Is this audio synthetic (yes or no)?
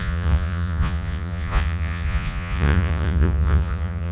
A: yes